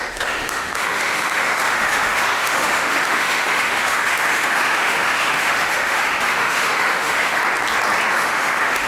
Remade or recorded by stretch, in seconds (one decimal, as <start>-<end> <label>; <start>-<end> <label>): 0.0-7.4 remade; 7.4-8.1 recorded; 8.1-8.9 remade